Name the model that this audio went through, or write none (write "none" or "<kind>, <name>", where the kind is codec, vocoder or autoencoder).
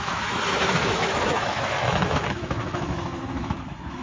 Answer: autoencoder, DAC-VAE